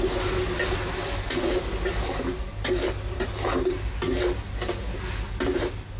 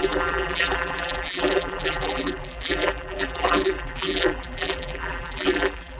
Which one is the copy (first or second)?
second